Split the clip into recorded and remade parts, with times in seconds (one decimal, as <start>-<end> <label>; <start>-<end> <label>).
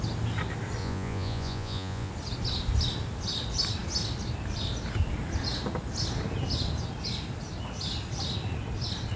0.0-0.8 recorded; 0.8-2.1 remade; 2.1-9.2 recorded